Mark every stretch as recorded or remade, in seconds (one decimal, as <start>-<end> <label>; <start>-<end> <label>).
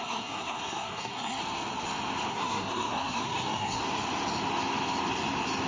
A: 0.0-1.4 remade; 1.4-2.3 recorded; 2.3-3.8 remade; 3.8-5.7 recorded